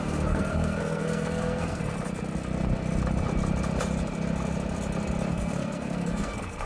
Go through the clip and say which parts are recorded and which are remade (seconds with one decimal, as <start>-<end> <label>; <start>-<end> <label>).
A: 0.0-1.8 remade; 1.8-5.3 recorded; 5.3-6.7 remade